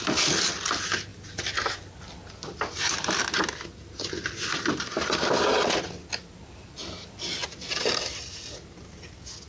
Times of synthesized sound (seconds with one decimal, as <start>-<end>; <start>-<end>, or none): none